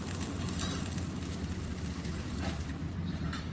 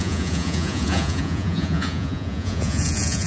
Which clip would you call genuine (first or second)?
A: first